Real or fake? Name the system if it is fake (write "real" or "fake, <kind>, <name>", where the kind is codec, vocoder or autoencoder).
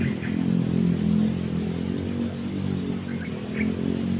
real